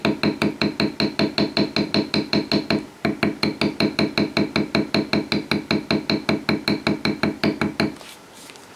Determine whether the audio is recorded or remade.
recorded